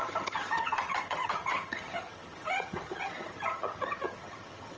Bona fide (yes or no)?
no